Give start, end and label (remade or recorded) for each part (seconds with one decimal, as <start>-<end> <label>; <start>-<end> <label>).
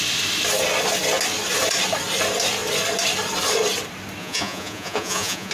0.0-4.2 recorded; 4.2-5.5 remade